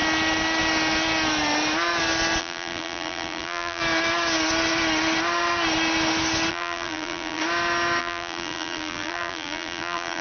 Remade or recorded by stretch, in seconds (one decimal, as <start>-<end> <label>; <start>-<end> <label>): 0.0-2.4 recorded; 2.4-3.8 remade; 3.8-6.5 recorded; 6.5-7.4 remade; 7.4-8.0 recorded; 8.0-10.2 remade